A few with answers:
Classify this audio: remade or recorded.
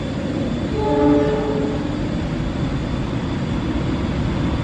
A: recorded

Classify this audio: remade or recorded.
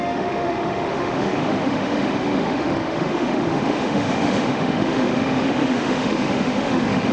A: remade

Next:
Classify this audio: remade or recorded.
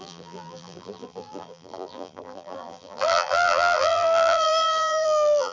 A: remade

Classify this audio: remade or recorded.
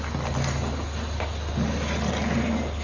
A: recorded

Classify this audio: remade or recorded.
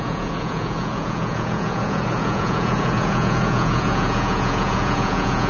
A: remade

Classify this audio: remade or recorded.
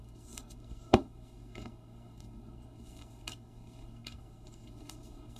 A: remade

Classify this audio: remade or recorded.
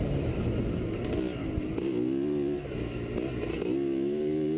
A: recorded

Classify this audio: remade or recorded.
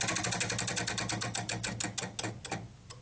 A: recorded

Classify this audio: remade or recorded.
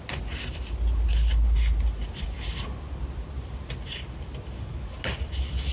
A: recorded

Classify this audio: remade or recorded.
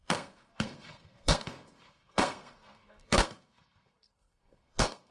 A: remade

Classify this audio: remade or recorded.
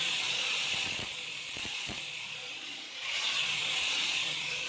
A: remade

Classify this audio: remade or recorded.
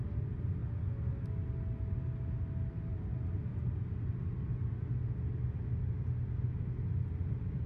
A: recorded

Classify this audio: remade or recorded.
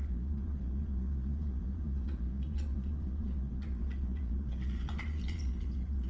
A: remade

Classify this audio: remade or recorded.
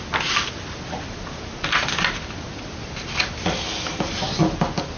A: recorded